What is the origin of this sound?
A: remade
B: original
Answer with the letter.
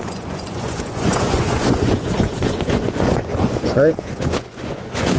A